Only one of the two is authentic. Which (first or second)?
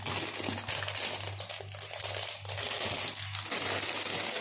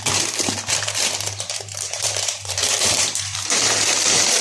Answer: first